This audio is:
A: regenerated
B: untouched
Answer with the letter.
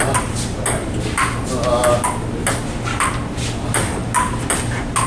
B